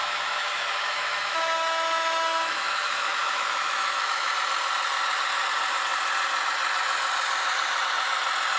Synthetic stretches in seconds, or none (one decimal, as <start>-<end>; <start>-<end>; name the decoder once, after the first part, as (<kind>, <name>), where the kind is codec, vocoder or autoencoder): 0.0-4.3 (autoencoder, DAC-VAE)